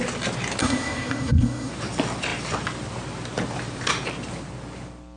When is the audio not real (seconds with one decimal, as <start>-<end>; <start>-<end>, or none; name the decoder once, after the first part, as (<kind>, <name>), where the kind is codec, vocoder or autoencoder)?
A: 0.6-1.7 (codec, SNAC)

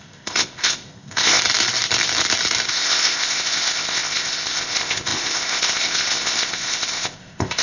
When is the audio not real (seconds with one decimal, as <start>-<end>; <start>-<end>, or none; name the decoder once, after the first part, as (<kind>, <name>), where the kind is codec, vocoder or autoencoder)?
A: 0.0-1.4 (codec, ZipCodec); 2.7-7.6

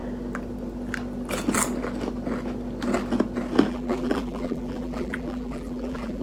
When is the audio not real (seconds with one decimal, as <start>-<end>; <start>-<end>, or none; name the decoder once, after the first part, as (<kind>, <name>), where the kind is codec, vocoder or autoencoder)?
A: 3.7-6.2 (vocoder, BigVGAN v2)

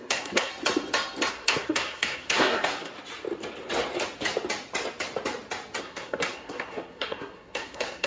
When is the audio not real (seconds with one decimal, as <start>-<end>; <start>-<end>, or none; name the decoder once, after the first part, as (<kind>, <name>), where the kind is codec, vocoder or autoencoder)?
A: 0.0-0.5 (codec, SNAC); 1.3-2.9; 5.8-8.1

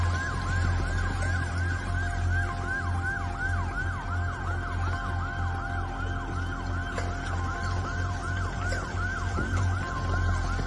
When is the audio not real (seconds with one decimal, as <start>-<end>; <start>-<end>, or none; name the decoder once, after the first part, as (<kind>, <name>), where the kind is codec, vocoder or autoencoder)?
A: 7.5-9.8 (vocoder, BigVGAN v2)

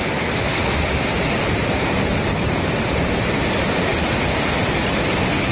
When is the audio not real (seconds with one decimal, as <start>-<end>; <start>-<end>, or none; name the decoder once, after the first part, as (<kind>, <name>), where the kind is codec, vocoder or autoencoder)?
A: none

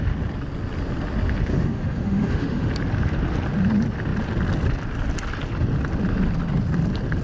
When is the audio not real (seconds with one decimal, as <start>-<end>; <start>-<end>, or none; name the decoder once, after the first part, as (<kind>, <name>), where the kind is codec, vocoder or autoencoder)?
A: 1.5-2.7 (autoencoder, DAC-VAE)